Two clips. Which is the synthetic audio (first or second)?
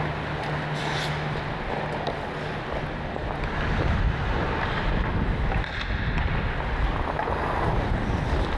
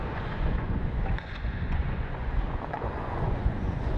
second